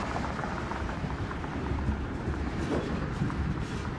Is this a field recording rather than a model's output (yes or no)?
no